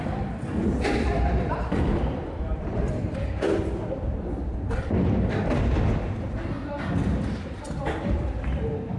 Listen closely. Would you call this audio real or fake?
fake